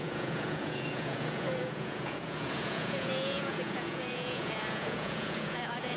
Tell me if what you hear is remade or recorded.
remade